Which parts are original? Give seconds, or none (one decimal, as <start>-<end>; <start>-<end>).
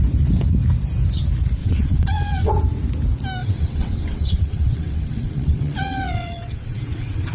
0.0-1.6; 2.5-3.4